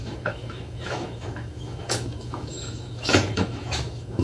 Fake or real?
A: fake